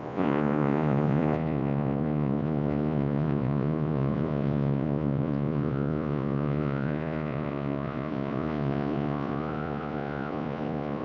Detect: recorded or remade remade